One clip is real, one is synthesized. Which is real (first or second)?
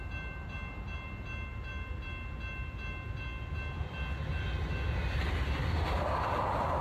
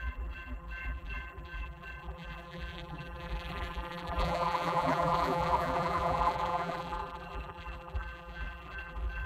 first